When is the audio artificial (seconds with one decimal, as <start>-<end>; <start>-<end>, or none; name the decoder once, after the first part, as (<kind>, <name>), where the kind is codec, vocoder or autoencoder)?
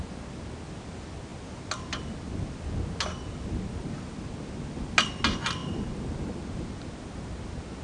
none